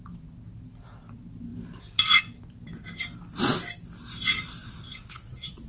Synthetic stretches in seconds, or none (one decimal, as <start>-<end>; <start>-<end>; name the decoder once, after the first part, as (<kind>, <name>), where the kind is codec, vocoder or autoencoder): 4.6-5.7 (vocoder, Vocos)